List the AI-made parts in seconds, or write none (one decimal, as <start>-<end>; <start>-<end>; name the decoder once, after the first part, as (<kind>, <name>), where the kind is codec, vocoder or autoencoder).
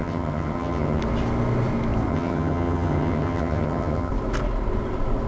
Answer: 0.0-1.0 (vocoder, HiFi-GAN); 2.1-4.1